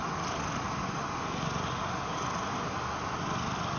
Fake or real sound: real